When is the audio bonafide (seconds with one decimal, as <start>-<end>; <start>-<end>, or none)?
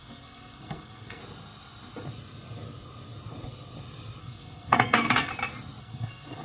1.2-4.2; 5.3-5.8